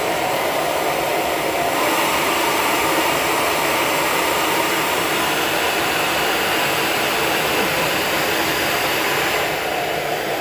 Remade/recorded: remade